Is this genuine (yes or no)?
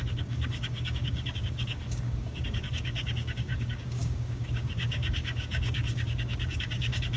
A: no